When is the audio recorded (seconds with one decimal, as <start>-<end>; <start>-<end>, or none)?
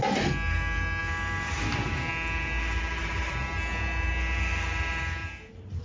0.0-3.0; 4.1-5.2